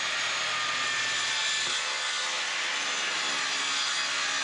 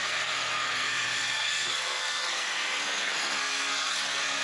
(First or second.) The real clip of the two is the first